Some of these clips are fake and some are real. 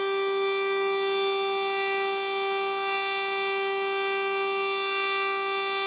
real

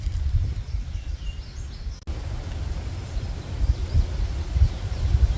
real